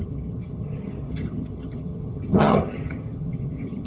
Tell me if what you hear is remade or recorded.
remade